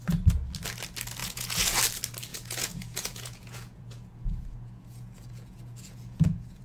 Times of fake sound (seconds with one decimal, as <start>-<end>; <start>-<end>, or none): 1.2-1.8; 2.3-6.6